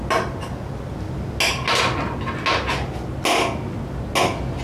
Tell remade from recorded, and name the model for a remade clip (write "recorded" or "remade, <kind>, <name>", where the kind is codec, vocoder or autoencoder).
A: recorded